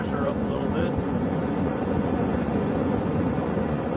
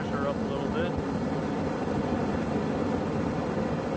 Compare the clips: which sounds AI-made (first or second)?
first